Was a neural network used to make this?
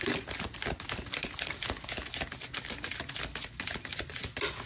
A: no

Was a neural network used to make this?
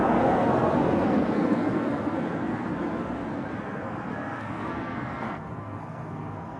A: yes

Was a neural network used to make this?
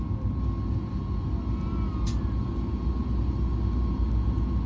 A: no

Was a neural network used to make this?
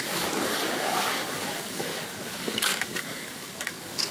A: yes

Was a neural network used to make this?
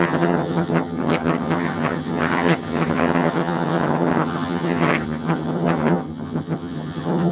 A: yes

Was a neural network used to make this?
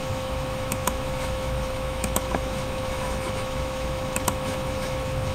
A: yes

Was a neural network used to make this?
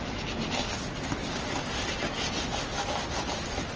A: no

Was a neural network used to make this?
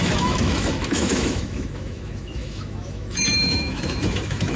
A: yes